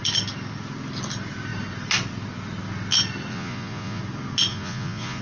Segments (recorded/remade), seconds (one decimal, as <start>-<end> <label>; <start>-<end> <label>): 0.0-3.3 recorded; 3.3-4.0 remade; 4.0-4.5 recorded; 4.5-5.2 remade